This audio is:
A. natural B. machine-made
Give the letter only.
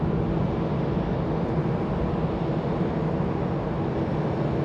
A